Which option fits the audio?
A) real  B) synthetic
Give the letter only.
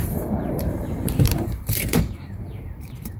B